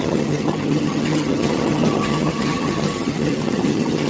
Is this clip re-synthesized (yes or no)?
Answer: yes